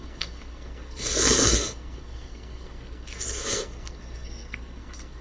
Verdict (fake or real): fake